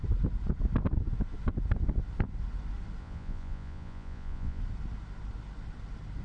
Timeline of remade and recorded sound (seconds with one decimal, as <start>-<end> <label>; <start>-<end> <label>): 0.0-3.0 recorded; 3.0-4.6 remade; 4.6-6.2 recorded